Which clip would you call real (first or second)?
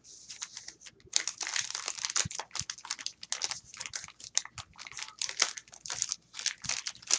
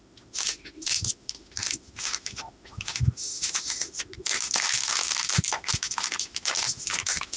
first